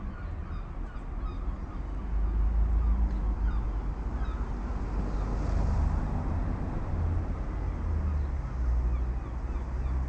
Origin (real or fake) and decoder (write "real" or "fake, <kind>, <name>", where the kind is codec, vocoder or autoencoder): real